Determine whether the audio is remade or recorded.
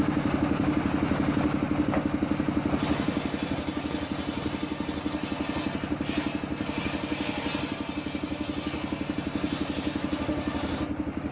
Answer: recorded